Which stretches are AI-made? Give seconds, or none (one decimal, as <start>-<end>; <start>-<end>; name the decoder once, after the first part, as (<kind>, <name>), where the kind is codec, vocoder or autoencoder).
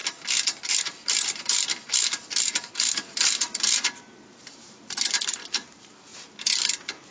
0.6-6.1 (vocoder, BigVGAN v2)